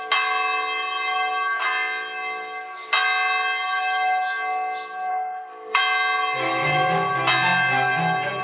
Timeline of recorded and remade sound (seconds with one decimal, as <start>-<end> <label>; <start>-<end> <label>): 0.0-5.1 recorded; 5.1-5.8 remade; 5.8-8.4 recorded